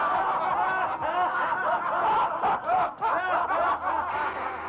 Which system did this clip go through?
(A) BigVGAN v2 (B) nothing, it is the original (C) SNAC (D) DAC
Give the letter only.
B